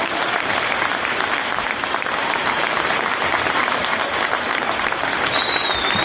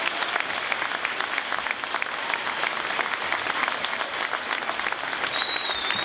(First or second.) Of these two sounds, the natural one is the second